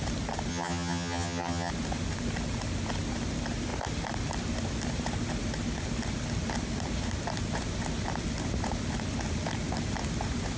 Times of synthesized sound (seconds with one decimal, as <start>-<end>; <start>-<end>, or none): 0.5-1.7